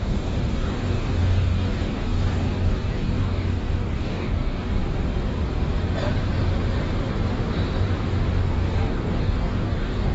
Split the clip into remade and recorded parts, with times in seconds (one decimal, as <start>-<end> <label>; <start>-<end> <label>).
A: 0.0-4.8 remade; 4.8-8.4 recorded; 8.4-10.1 remade